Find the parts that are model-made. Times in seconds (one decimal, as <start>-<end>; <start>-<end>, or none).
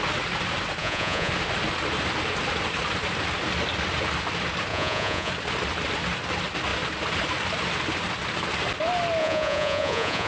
0.8-1.3; 4.7-5.3; 9.2-10.3